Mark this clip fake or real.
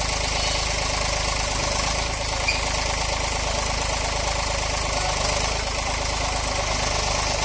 real